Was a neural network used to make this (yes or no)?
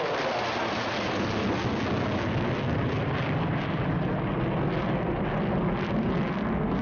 no